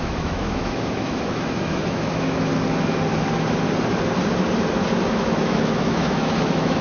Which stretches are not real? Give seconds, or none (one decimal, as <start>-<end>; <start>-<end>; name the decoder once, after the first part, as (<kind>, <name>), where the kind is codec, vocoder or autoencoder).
0.0-2.5 (autoencoder, DAC-VAE); 5.0-6.8